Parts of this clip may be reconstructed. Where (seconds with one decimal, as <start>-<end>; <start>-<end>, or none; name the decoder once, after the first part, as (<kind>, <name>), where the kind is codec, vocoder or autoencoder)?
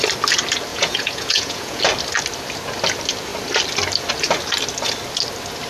0.7-1.8 (vocoder, Vocos)